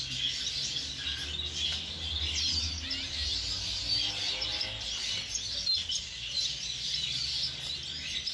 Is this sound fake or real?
real